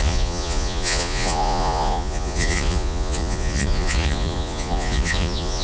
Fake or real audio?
fake